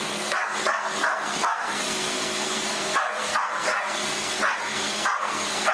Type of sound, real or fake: fake